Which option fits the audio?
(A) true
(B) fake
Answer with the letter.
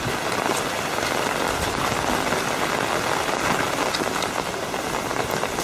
A